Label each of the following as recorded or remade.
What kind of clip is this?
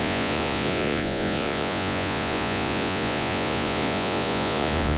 remade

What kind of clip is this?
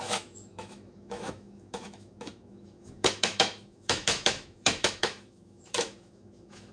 remade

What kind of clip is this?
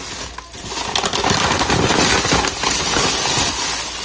recorded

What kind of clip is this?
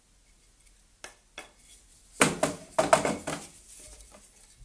recorded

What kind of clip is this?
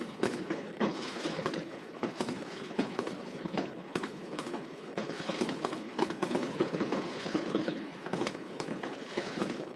remade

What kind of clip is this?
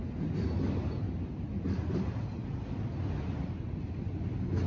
recorded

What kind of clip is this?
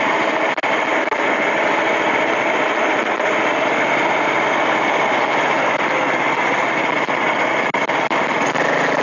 recorded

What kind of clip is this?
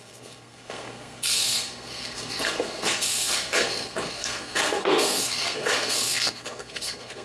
remade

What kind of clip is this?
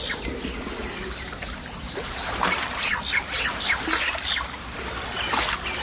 recorded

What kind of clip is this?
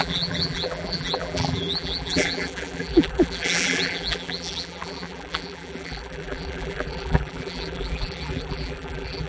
remade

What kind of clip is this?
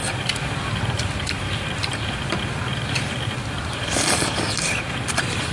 recorded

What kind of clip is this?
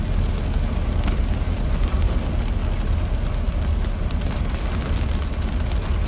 recorded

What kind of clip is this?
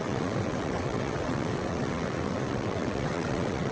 remade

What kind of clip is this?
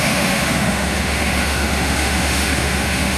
remade